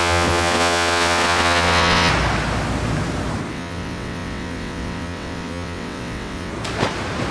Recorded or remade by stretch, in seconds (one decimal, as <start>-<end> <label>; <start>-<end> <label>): 0.0-2.1 remade; 2.1-3.5 recorded; 3.5-6.5 remade; 6.5-7.3 recorded